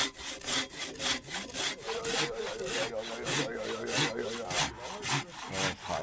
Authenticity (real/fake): real